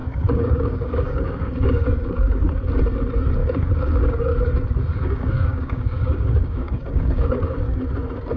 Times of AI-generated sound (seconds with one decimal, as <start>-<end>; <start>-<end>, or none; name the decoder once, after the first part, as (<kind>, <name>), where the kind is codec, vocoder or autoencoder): 0.0-2.4 (codec, DAC); 3.4-4.2; 4.9-7.8